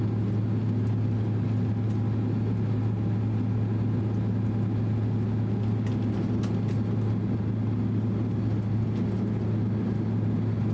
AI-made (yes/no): no